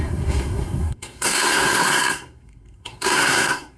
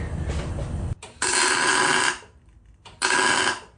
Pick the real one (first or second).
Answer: second